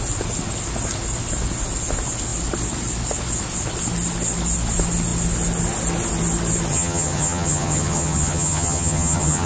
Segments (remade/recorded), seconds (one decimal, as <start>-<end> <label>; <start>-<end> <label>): 0.0-6.7 recorded; 6.7-9.5 remade